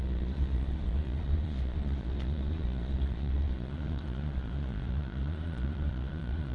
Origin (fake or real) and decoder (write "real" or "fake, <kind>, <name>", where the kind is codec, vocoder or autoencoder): fake, vocoder, Vocos